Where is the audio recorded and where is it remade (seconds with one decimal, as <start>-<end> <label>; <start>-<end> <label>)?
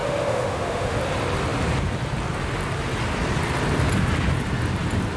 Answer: 0.0-1.0 remade; 1.0-5.2 recorded